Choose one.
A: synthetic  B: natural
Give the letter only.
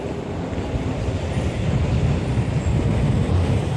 B